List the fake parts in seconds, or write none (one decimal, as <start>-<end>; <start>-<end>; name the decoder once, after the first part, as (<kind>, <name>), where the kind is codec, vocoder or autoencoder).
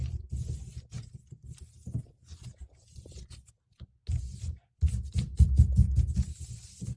none